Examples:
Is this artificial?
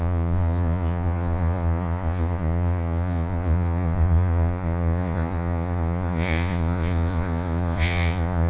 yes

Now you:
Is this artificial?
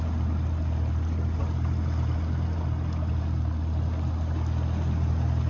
no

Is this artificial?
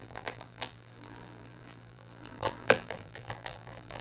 yes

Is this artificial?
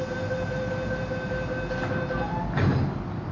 no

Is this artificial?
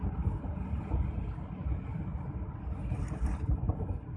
no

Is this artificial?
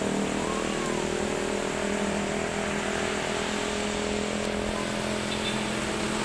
no